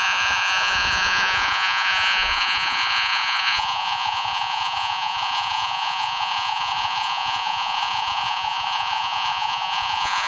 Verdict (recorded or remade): remade